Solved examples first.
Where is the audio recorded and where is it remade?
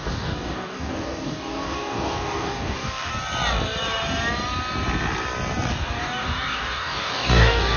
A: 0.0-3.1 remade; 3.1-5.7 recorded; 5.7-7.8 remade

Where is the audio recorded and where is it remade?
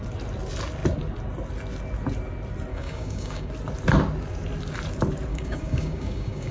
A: 0.0-2.7 recorded; 2.7-3.5 remade; 3.5-5.3 recorded; 5.3-6.5 remade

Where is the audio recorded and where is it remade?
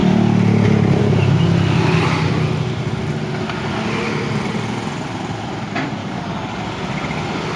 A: 0.0-6.0 recorded; 6.0-6.6 remade; 6.6-7.6 recorded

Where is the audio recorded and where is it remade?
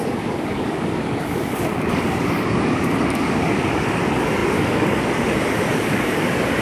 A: 0.0-6.6 remade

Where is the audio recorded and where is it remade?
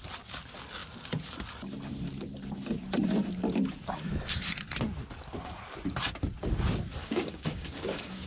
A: 0.0-7.0 recorded; 7.0-8.3 remade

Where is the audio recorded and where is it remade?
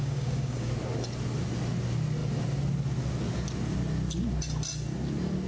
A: 0.0-0.7 remade; 0.7-5.5 recorded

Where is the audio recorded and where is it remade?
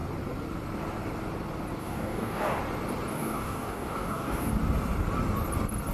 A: 0.0-1.8 recorded; 1.8-2.6 remade; 2.6-3.1 recorded; 3.1-4.5 remade; 4.5-5.9 recorded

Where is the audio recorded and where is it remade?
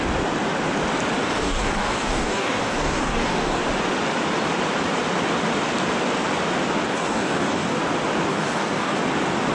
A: 0.0-1.2 recorded; 1.2-3.6 remade; 3.6-6.9 recorded; 6.9-7.8 remade; 7.8-8.3 recorded; 8.3-9.0 remade; 9.0-9.5 recorded